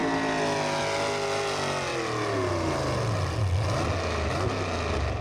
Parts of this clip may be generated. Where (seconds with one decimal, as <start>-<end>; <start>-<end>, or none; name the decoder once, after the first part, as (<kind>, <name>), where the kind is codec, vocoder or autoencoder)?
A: none